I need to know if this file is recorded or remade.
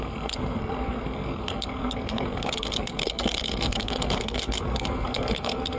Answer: remade